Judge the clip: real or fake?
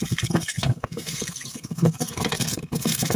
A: fake